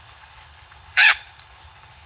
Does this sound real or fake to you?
fake